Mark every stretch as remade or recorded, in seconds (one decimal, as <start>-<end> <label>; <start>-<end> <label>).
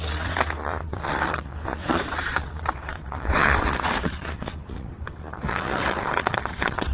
0.0-6.9 remade